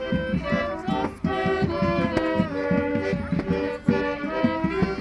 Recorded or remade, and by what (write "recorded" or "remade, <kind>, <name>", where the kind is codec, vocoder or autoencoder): recorded